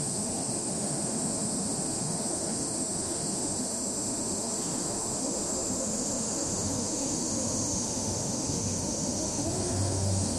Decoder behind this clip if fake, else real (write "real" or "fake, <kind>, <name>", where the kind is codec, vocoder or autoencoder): fake, autoencoder, DAC-VAE